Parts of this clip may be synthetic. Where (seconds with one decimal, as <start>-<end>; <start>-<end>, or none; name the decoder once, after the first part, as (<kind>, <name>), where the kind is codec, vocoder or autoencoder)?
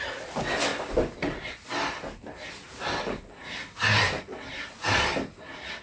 none